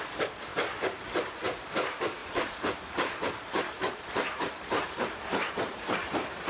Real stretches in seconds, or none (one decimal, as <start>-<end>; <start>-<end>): 0.0-2.2; 6.1-6.5